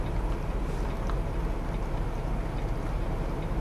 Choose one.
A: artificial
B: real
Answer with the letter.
B